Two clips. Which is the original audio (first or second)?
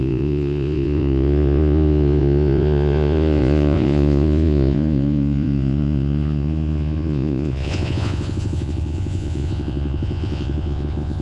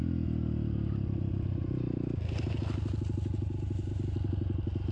second